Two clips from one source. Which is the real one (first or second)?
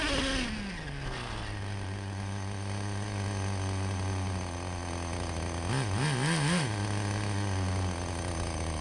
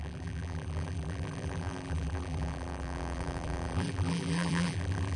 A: first